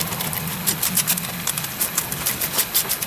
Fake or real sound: real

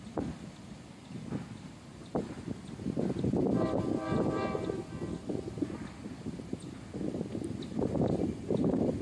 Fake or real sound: real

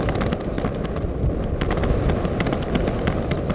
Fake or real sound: real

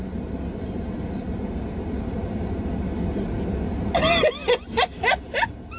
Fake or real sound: real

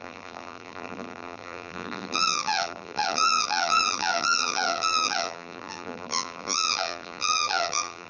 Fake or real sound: fake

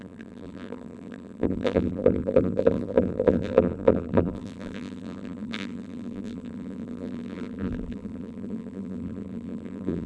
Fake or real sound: fake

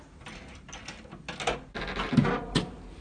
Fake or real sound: real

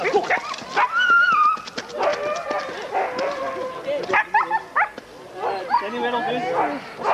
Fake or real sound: real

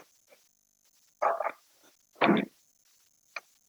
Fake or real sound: real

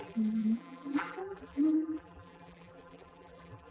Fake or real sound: fake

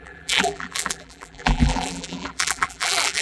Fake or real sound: fake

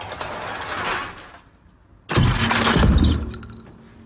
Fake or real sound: real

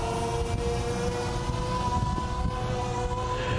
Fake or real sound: real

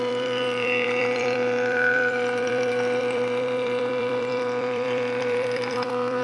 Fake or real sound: fake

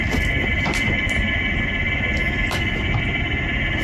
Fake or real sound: fake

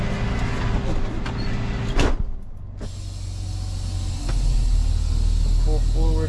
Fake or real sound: real